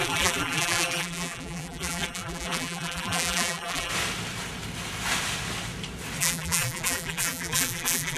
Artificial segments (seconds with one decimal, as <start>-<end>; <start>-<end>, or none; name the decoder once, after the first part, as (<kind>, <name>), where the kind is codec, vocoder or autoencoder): 0.0-3.9 (vocoder, BigVGAN v2); 6.2-8.2